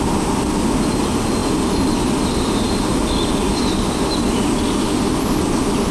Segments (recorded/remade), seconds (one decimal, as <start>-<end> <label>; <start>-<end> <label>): 0.0-5.9 recorded